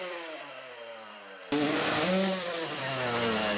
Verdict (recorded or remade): remade